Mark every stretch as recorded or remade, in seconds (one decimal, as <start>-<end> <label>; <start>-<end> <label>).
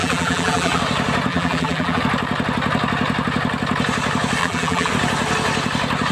0.0-0.8 remade; 0.8-1.3 recorded; 1.3-2.0 remade; 2.0-4.4 recorded; 4.4-4.9 remade; 4.9-6.1 recorded